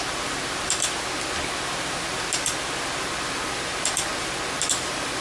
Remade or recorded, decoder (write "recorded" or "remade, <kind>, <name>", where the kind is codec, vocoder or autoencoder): recorded